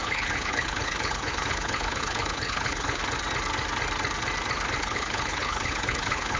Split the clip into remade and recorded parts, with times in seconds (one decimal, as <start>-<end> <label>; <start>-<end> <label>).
0.0-3.0 remade; 3.0-4.8 recorded; 4.8-6.4 remade